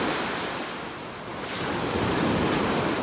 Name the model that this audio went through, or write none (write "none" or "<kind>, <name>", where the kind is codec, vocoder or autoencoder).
none